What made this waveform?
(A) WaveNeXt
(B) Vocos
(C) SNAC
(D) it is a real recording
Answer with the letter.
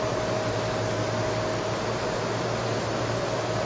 D